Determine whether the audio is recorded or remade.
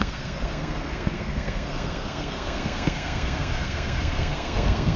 remade